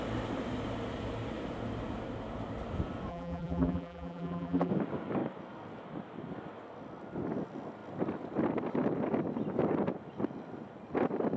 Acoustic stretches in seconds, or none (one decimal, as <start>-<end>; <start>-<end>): 0.0-3.1; 4.7-11.4